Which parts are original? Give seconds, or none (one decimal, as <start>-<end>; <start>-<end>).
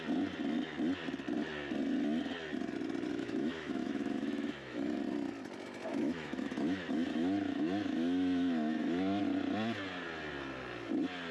0.0-3.1; 5.0-5.9; 9.2-11.3